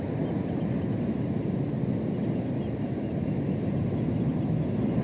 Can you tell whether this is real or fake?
real